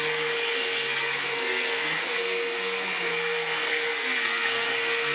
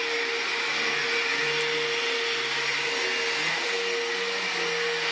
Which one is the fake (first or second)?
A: first